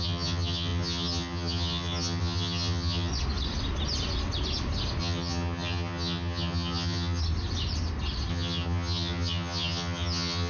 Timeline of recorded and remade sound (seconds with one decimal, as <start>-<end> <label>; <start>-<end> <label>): 0.0-3.1 remade; 3.1-5.0 recorded; 5.0-7.2 remade; 7.2-8.3 recorded; 8.3-10.5 remade